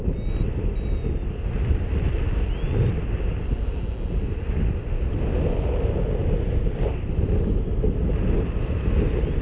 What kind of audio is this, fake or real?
real